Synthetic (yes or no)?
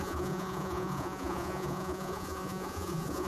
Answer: yes